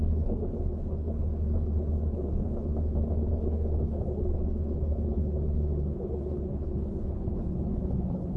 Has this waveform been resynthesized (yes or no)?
yes